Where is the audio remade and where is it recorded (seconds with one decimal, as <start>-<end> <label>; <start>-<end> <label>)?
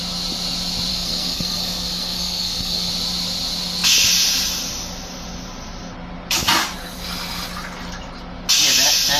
0.0-0.9 recorded; 0.9-2.9 remade; 2.9-9.2 recorded